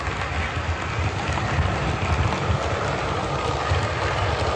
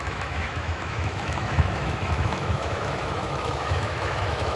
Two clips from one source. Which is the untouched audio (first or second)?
first